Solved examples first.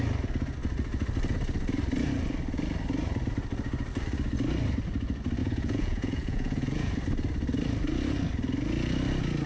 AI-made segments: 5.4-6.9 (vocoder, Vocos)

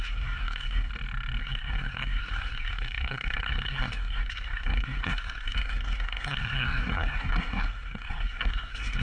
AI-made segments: 0.0-0.9 (codec, SNAC); 1.4-9.0

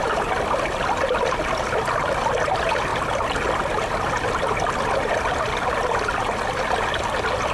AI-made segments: none

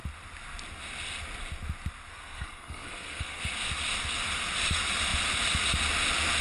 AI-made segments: 2.1-3.4 (codec, SNAC)

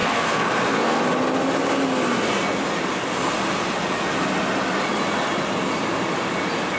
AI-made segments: 0.0-1.0 (codec, SNAC)